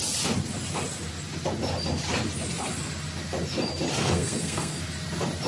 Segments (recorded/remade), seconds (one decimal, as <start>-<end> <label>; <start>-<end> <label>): 0.0-4.0 recorded; 4.0-4.8 remade; 4.8-5.5 recorded